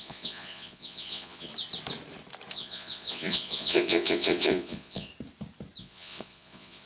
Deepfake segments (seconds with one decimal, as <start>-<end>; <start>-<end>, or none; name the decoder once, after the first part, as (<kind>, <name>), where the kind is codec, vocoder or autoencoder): 0.0-1.5 (vocoder, Vocos); 2.5-5.1; 5.8-6.9